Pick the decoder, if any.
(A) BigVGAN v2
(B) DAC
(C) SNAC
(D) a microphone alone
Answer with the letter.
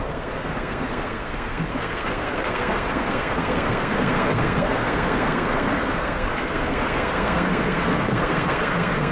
C